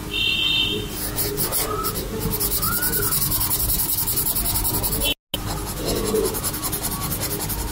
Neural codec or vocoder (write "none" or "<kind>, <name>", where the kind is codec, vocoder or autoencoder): none